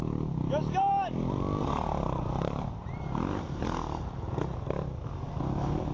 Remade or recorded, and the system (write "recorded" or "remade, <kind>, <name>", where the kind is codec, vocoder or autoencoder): recorded